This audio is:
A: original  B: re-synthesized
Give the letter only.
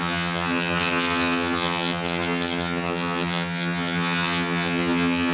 B